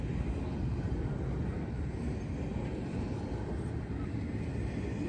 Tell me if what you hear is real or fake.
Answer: real